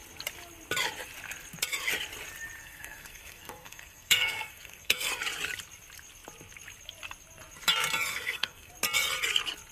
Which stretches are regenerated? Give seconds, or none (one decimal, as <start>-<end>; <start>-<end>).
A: 2.6-5.1; 8.1-8.7